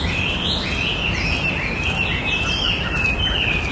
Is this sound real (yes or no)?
no